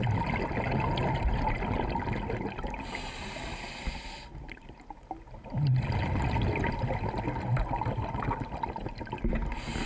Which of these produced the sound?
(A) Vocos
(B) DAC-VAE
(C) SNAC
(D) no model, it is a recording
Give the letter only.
D